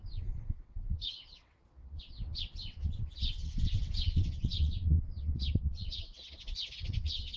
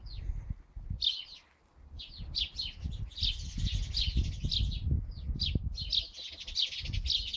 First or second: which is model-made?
first